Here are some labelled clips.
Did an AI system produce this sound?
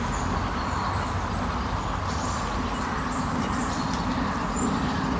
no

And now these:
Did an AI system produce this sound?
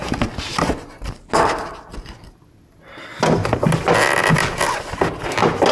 no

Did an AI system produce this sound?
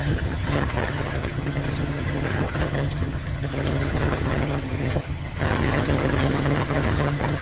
yes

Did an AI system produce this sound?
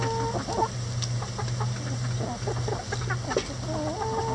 no